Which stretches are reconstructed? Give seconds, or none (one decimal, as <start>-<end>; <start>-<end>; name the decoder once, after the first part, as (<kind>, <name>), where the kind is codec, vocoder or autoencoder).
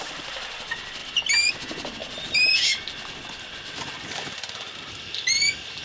none